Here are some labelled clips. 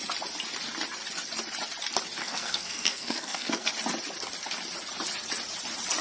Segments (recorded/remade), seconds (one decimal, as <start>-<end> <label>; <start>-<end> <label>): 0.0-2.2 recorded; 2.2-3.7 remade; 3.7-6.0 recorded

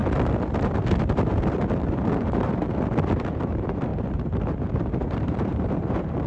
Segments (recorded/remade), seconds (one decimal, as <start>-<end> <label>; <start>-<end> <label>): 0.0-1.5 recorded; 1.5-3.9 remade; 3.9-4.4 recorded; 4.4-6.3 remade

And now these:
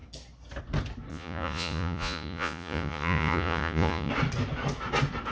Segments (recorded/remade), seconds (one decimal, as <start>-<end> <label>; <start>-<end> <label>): 0.0-1.1 recorded; 1.1-4.1 remade; 4.1-5.3 recorded